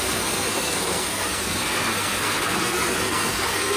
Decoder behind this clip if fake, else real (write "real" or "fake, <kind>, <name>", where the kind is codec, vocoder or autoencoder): fake, codec, SNAC